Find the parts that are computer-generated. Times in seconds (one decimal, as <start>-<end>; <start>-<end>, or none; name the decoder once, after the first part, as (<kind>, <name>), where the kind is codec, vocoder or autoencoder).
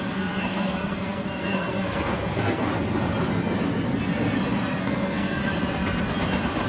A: 0.0-2.7 (codec, SNAC); 4.8-5.4